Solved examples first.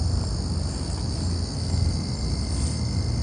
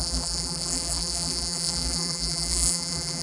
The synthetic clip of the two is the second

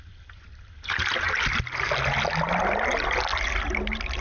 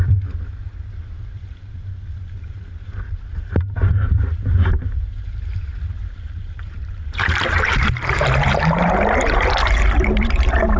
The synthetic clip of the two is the second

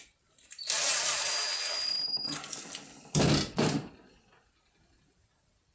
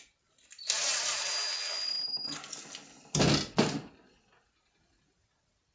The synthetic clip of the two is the first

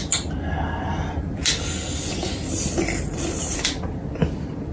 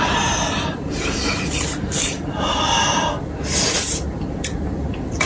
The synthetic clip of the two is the second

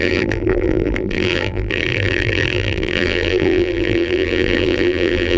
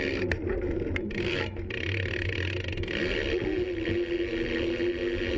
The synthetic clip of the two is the first